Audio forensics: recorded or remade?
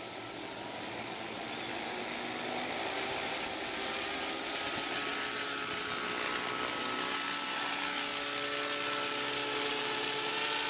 recorded